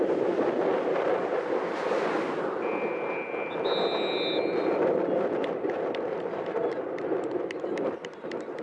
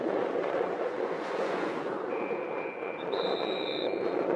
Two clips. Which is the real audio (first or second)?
first